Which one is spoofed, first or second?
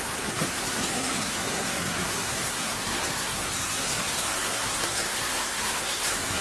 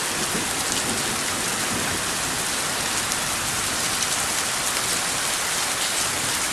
first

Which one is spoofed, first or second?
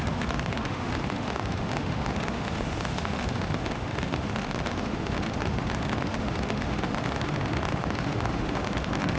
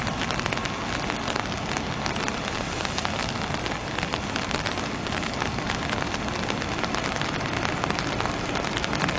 first